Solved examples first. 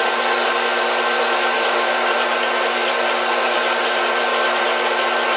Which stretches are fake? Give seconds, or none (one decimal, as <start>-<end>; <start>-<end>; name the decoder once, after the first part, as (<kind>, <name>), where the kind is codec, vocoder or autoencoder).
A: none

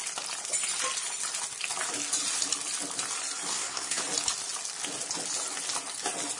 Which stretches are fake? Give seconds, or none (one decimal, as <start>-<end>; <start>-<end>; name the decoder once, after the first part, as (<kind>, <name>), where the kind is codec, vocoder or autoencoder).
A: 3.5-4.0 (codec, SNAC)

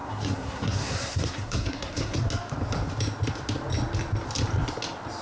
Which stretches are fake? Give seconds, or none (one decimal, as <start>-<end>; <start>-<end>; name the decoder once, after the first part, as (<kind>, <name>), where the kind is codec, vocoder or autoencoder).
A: 0.0-2.2 (codec, SNAC)

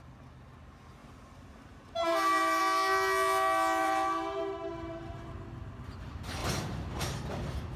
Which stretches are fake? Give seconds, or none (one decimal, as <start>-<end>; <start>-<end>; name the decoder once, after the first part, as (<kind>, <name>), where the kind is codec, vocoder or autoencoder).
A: 1.0-2.6 (vocoder, BigVGAN v2); 3.8-5.3; 6.4-7.0

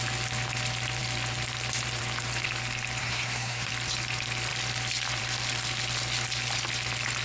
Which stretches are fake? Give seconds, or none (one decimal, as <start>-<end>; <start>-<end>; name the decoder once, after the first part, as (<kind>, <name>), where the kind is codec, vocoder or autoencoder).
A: 3.0-3.7 (codec, SNAC)